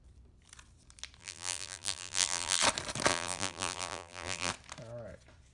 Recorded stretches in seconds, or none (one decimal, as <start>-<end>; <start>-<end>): 0.0-1.2; 2.6-3.1; 4.5-5.5